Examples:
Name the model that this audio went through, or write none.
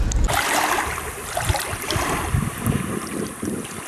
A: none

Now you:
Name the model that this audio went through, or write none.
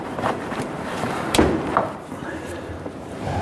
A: vocoder, BigVGAN v2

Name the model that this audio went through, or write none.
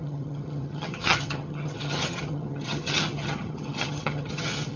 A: vocoder, HiFi-GAN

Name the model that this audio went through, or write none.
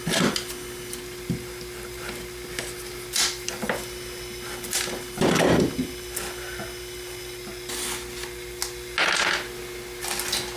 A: none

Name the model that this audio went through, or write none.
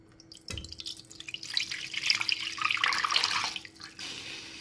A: none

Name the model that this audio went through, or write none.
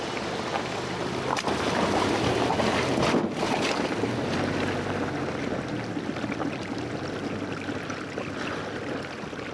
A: none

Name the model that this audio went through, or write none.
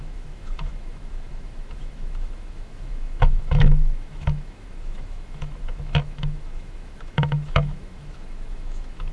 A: autoencoder, DAC-VAE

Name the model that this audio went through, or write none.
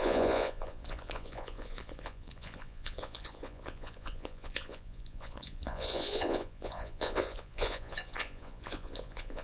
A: vocoder, Vocos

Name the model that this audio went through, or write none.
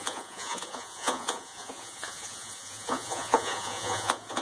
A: vocoder, Vocos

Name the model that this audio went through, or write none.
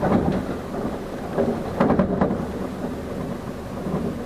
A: none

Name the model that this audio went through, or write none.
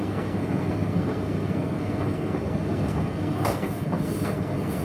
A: codec, SNAC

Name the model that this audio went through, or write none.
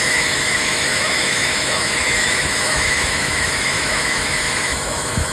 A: autoencoder, DAC-VAE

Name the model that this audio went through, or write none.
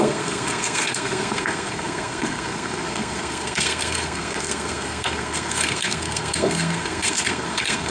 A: codec, SNAC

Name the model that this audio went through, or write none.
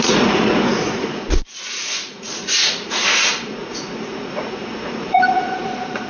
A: vocoder, Vocos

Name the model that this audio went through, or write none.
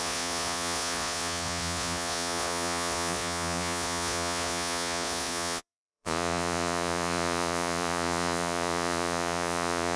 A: vocoder, Vocos